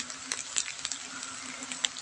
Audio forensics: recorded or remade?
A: recorded